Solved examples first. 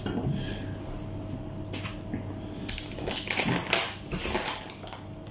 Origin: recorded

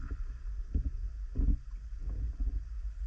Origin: recorded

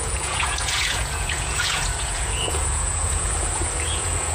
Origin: remade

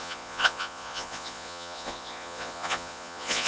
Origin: remade